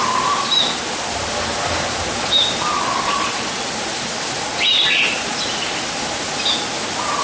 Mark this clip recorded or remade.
recorded